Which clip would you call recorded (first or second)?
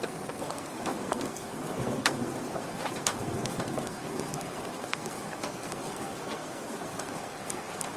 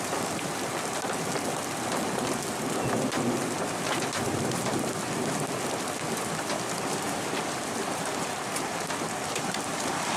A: second